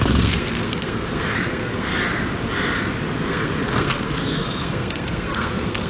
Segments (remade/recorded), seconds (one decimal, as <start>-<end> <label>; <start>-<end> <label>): 0.0-1.9 remade; 1.9-3.2 recorded; 3.2-5.9 remade